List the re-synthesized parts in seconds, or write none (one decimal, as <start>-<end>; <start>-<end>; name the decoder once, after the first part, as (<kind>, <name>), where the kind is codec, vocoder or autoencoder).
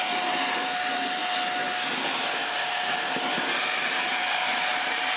0.0-1.2 (vocoder, BigVGAN v2); 3.7-5.2